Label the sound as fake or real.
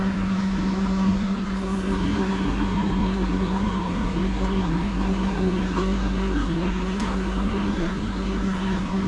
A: fake